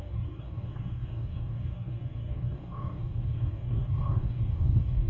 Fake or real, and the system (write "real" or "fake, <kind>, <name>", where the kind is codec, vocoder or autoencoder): fake, codec, DAC